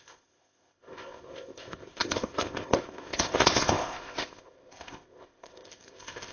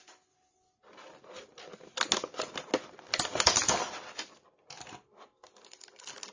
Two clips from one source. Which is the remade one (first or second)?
first